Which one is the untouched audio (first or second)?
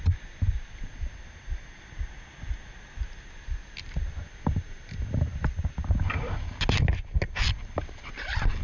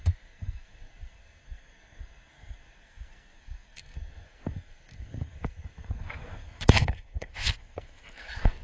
first